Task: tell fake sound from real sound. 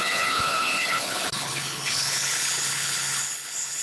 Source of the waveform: fake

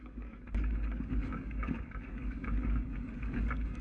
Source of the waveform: fake